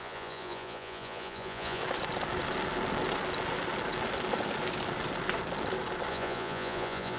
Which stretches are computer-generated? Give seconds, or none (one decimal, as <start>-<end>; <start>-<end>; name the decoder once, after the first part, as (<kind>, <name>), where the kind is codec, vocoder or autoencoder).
0.0-1.8 (vocoder, Vocos); 6.1-7.2